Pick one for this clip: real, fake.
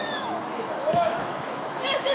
fake